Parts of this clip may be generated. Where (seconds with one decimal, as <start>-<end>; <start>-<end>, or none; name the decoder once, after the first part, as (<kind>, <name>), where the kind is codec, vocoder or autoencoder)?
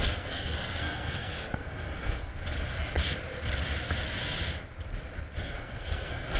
0.0-2.3 (codec, SNAC); 5.4-6.4